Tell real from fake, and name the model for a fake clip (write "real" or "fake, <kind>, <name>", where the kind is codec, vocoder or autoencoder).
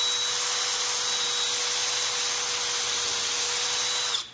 real